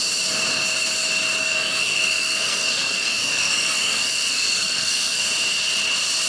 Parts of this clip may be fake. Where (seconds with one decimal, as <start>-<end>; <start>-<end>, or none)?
1.4-5.2